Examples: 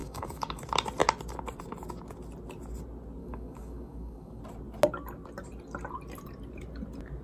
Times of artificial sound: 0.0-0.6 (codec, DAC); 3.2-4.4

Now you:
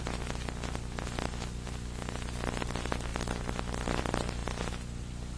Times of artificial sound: none

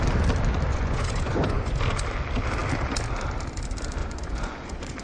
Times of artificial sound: 0.7-1.8 (vocoder, Vocos); 4.0-5.0

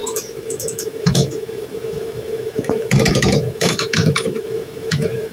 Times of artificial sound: 0.0-5.3 (autoencoder, DAC-VAE)

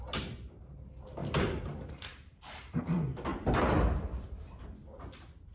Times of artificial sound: 1.2-2.8 (vocoder, BigVGAN v2)